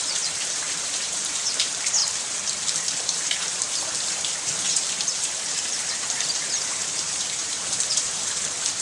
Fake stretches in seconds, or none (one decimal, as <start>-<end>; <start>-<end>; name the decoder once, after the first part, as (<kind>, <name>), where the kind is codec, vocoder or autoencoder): 0.0-2.0 (vocoder, BigVGAN v2); 3.0-8.8